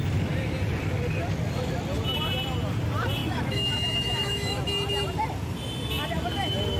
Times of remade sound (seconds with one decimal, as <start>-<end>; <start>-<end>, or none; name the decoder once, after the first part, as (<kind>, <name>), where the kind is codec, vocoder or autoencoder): 3.2-4.6 (autoencoder, DAC-VAE)